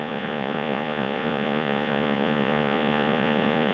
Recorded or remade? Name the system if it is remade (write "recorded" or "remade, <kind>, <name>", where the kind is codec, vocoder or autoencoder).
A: remade, vocoder, Vocos